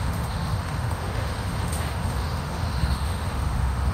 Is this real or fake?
fake